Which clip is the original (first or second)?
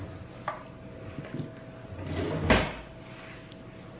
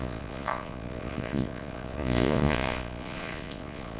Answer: first